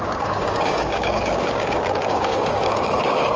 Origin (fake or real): fake